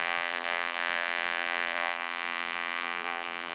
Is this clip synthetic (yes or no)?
yes